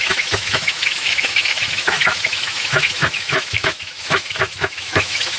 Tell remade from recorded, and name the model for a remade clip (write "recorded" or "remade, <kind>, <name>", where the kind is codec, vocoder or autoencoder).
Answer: remade, autoencoder, DAC-VAE